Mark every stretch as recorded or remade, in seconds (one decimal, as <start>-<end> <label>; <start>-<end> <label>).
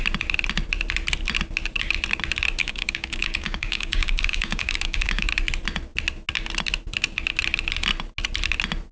0.0-2.6 recorded; 2.6-5.3 remade; 5.3-8.9 recorded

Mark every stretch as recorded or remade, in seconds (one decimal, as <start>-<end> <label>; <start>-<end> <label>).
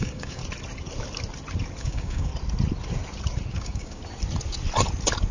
0.0-0.4 remade; 0.4-1.8 recorded; 1.8-2.3 remade; 2.3-3.5 recorded; 3.5-4.0 remade; 4.0-5.3 recorded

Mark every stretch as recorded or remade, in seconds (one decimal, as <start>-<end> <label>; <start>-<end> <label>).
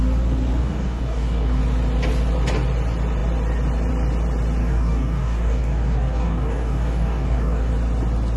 0.0-0.6 recorded; 0.6-1.6 remade; 1.6-4.6 recorded; 4.6-7.7 remade; 7.7-8.4 recorded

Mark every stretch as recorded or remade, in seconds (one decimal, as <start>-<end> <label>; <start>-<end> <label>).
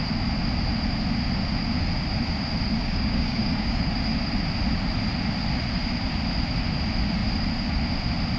0.0-2.7 recorded; 2.7-3.9 remade; 3.9-8.4 recorded